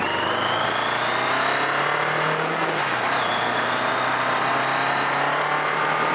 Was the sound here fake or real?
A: real